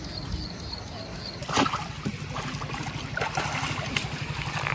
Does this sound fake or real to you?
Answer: real